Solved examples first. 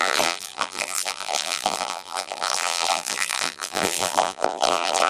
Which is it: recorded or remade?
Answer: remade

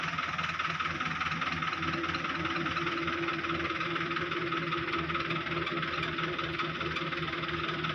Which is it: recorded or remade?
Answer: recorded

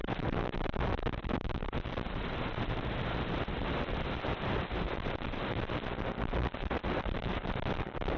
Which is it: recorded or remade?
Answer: remade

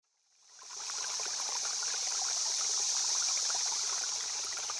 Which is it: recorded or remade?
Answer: remade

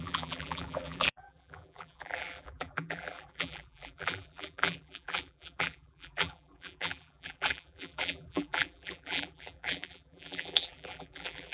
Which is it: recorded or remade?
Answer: remade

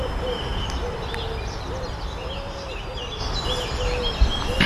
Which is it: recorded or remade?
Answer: recorded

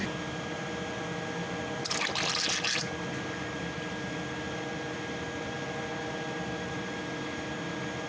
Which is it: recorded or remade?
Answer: recorded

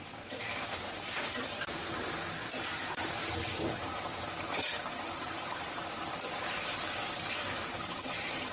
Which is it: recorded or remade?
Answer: remade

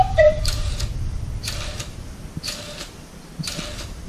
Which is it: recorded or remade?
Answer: remade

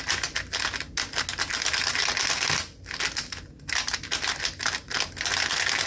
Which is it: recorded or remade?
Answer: recorded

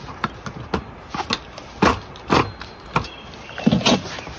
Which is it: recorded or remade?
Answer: recorded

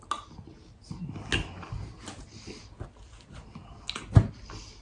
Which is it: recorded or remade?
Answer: recorded